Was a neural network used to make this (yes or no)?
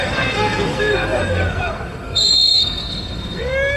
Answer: yes